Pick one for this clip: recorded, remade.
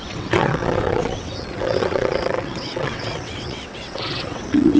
remade